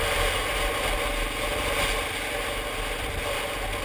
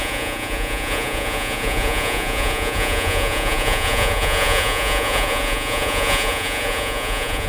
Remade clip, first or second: second